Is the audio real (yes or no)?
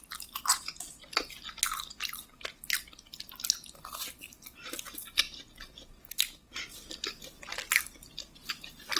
yes